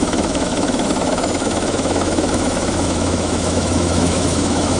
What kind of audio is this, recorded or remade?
remade